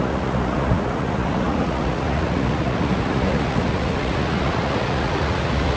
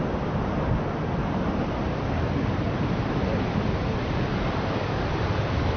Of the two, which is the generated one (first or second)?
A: first